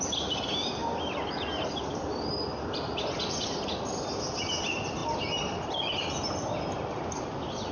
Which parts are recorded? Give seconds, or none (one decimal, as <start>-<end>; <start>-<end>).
0.0-7.7